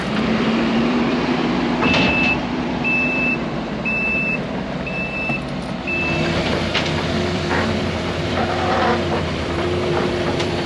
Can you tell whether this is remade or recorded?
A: remade